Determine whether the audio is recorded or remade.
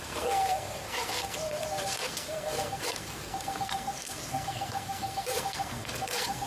remade